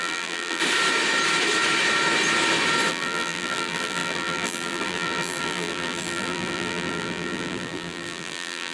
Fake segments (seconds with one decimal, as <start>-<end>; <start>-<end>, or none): 0.0-0.6; 2.9-8.7